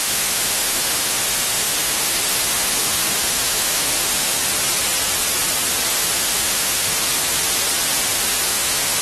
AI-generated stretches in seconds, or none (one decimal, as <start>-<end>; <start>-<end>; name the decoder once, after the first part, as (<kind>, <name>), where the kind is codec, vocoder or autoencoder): 0.0-4.4 (autoencoder, DAC-VAE); 5.9-7.1; 8.1-9.0